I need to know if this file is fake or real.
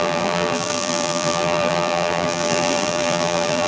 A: fake